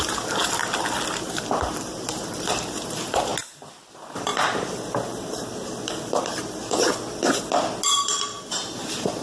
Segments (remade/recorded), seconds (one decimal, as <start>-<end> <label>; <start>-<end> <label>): 0.0-0.6 remade; 0.6-1.2 recorded; 1.2-3.3 remade; 3.3-3.9 recorded; 3.9-6.9 remade; 6.9-7.9 recorded; 7.9-9.2 remade